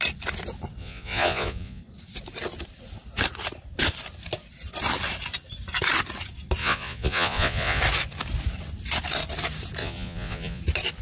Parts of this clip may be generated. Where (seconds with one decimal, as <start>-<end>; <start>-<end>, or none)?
0.8-1.8; 6.6-7.8; 9.8-10.6